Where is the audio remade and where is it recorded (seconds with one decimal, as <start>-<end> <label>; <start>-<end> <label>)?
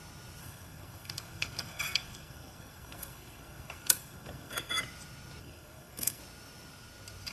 0.0-0.4 recorded; 0.4-4.8 remade; 4.8-5.4 recorded; 5.4-6.2 remade; 6.2-7.3 recorded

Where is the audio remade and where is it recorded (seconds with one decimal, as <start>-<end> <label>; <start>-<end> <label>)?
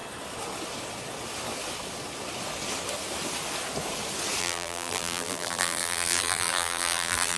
0.0-4.4 recorded; 4.4-7.4 remade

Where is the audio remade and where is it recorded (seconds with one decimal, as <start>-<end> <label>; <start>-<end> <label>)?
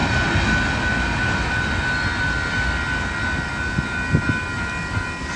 0.0-5.4 recorded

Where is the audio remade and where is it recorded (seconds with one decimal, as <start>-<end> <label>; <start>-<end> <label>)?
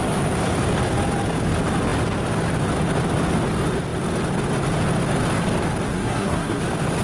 0.0-5.9 recorded; 5.9-6.6 remade; 6.6-7.0 recorded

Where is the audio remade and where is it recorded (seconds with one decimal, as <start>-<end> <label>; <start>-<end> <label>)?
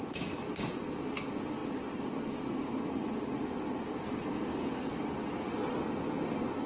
0.0-6.7 recorded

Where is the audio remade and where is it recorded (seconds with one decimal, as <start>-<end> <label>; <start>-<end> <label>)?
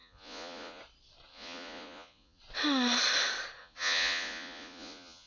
0.0-0.8 remade; 0.8-1.3 recorded; 1.3-2.4 remade; 2.4-3.6 recorded; 3.6-5.3 remade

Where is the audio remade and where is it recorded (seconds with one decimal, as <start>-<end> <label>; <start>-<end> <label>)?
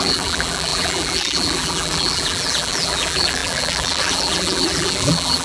0.0-5.4 remade